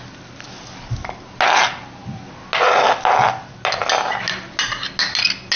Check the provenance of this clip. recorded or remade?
recorded